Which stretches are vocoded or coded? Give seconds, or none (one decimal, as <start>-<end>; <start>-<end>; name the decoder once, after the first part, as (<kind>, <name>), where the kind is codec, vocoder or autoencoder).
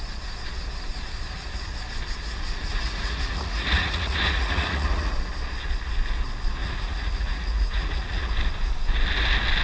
2.7-5.1 (vocoder, Vocos); 6.6-8.3